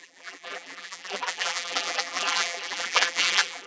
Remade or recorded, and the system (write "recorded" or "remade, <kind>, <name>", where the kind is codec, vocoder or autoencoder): remade, vocoder, BigVGAN v2